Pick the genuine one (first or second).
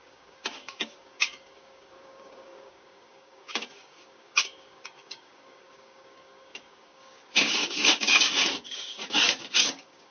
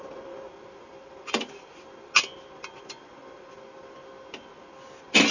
second